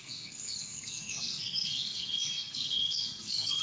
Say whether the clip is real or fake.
fake